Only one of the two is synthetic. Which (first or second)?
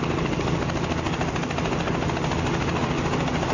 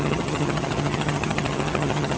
second